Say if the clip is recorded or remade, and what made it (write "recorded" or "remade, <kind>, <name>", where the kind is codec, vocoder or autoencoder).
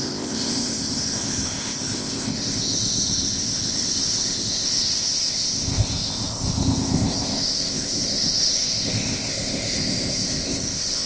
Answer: remade, codec, ZipCodec